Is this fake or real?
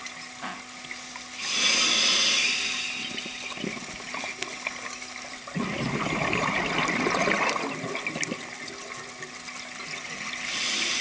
real